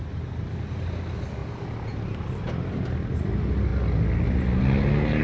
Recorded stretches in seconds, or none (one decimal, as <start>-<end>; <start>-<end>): 0.0-5.2